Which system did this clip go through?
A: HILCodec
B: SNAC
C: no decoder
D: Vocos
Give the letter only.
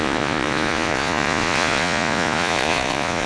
D